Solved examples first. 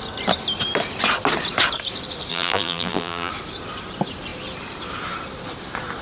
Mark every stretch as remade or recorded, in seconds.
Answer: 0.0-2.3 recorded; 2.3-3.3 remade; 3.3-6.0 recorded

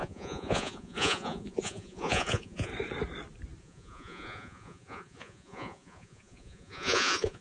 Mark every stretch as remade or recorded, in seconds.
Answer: 0.0-2.7 remade; 2.7-3.6 recorded; 3.6-7.4 remade

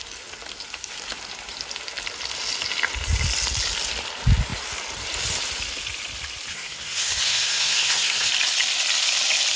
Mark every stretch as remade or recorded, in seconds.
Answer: 0.0-6.5 recorded; 6.5-8.3 remade; 8.3-9.6 recorded

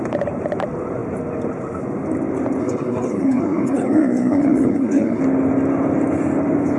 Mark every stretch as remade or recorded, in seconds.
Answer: 0.0-2.6 recorded; 2.6-5.2 remade; 5.2-6.8 recorded